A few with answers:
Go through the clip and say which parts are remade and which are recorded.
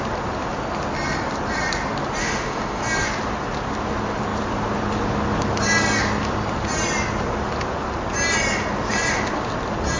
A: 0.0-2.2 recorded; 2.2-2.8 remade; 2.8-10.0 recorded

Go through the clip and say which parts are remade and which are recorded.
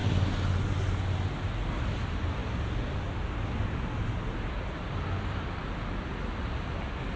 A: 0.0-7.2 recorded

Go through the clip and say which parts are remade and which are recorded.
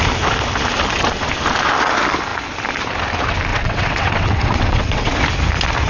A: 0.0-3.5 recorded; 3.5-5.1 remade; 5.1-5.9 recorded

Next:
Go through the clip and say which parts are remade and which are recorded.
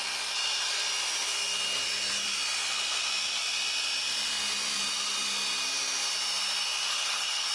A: 0.0-6.9 recorded; 6.9-7.5 remade